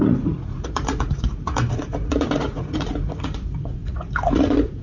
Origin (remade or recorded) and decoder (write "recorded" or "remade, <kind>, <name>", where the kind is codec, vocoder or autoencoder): remade, vocoder, Vocos